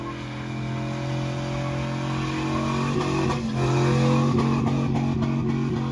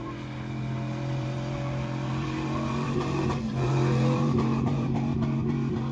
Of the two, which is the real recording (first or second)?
first